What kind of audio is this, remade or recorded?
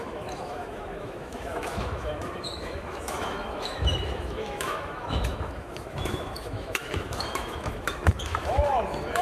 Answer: remade